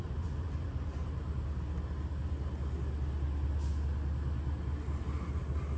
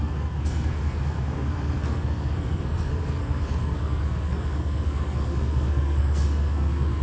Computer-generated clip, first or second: second